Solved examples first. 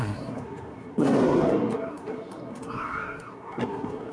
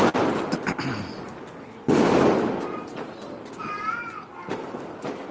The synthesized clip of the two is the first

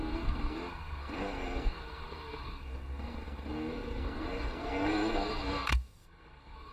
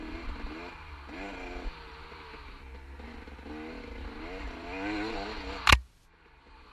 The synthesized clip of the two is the first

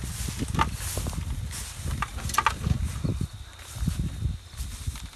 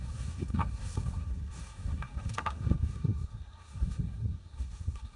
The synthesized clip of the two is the second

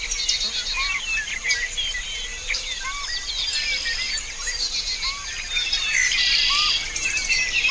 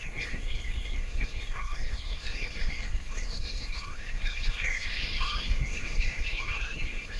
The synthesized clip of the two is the second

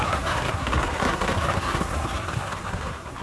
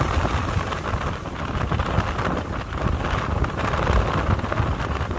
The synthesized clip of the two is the first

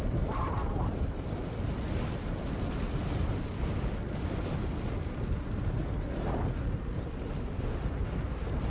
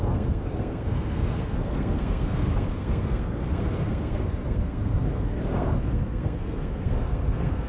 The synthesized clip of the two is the second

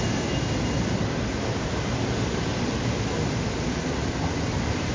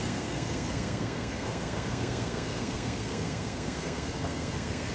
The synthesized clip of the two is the second